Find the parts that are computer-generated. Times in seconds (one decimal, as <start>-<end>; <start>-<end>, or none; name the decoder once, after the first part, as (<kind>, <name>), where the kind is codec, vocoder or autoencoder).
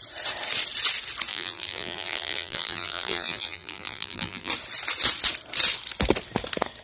1.3-4.5 (vocoder, BigVGAN v2)